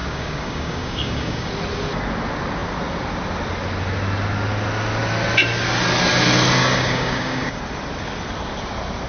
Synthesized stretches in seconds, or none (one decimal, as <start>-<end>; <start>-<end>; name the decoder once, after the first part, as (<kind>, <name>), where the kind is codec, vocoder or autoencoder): 0.0-1.5 (codec, DAC); 6.6-7.6